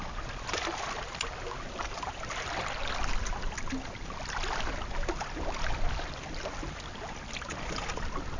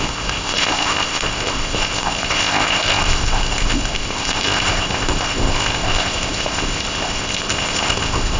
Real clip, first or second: first